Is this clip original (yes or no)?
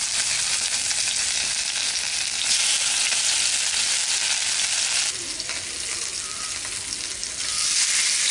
yes